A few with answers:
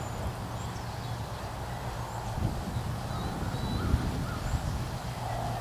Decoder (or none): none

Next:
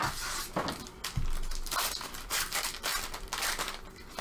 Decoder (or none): none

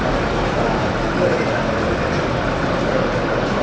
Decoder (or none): none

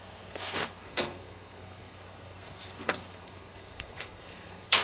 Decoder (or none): codec, SNAC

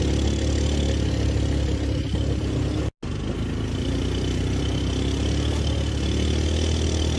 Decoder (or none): none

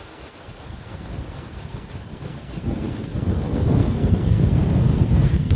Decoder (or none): codec, SNAC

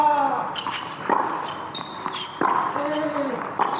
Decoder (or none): none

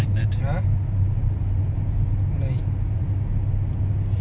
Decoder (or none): none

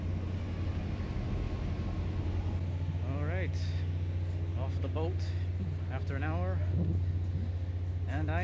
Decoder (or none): none